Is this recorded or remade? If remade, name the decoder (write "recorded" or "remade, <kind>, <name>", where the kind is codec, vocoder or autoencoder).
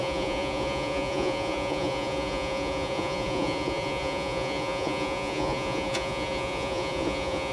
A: remade, vocoder, Vocos